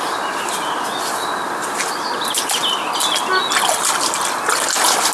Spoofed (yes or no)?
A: no